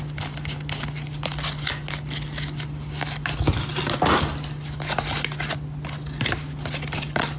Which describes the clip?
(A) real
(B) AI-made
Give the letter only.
A